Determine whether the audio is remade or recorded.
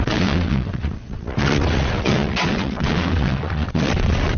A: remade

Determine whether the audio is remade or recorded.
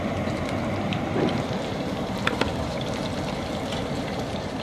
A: remade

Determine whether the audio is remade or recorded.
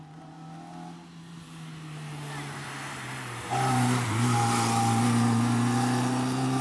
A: recorded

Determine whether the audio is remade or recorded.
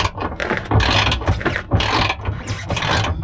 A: recorded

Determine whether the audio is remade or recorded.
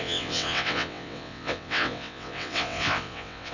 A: remade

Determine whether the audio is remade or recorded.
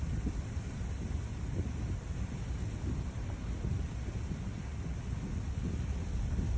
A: recorded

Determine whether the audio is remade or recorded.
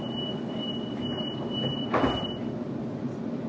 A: recorded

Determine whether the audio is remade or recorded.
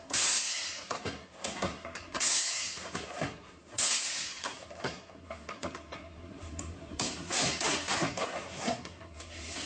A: remade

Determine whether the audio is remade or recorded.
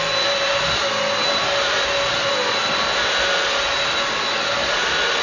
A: recorded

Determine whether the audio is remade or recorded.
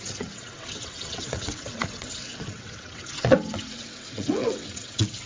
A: remade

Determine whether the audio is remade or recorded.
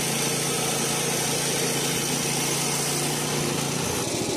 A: recorded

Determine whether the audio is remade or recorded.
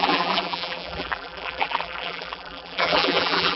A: remade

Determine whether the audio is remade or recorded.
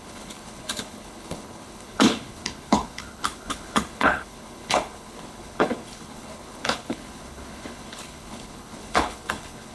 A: remade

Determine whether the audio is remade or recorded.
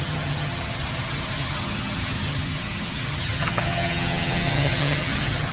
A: remade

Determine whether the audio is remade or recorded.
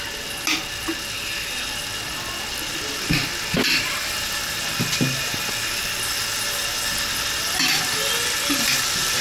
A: recorded